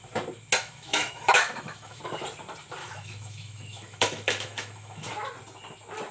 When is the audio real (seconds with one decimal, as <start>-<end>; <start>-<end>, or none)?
0.0-0.6; 2.0-2.8; 5.1-6.1